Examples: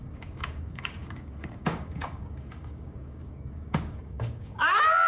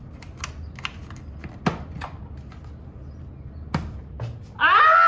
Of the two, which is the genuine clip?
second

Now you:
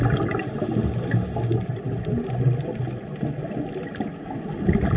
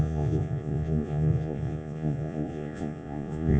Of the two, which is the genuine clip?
first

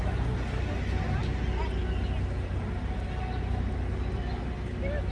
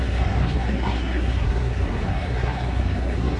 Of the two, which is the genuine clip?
first